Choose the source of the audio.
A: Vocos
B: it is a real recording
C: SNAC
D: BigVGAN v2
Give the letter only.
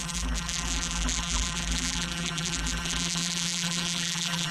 D